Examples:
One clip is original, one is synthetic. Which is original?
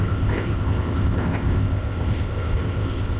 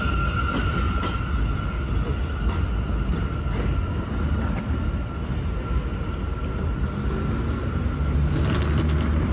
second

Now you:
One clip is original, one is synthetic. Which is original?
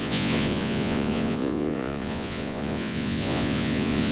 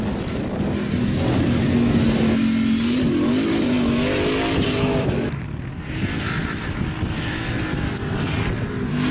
second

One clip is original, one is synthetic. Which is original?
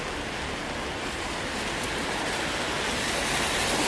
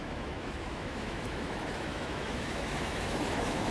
first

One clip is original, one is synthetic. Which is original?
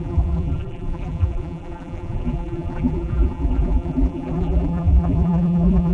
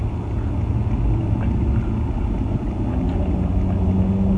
second